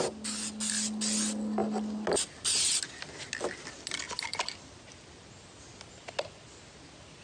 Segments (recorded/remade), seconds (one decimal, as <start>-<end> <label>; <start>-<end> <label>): 0.0-7.2 recorded